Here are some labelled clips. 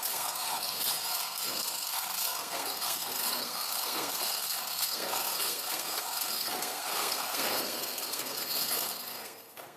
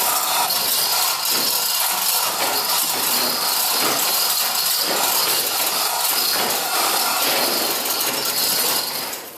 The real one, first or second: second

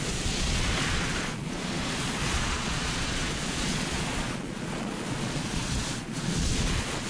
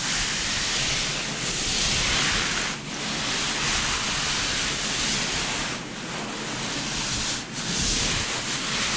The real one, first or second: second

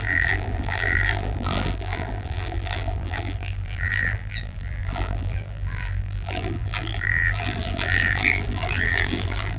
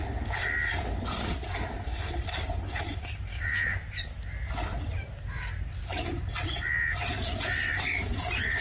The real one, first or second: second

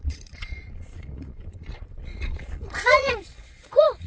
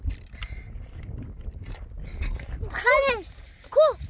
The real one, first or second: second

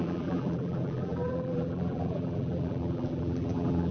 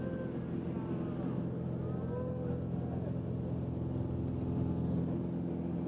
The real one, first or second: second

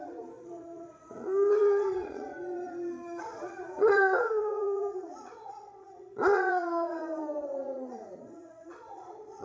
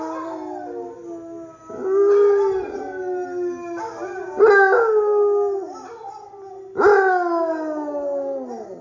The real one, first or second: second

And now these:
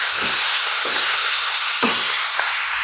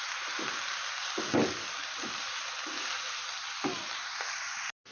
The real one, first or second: second